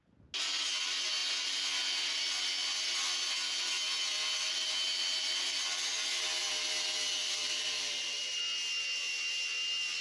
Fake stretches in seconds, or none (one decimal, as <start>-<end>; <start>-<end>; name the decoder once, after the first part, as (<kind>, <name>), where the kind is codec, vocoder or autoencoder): 7.2-8.4 (vocoder, BigVGAN v2)